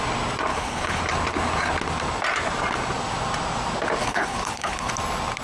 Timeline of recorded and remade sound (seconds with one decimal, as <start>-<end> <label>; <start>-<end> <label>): 0.0-0.5 recorded; 0.5-1.0 remade; 1.0-4.0 recorded; 4.0-4.9 remade; 4.9-5.4 recorded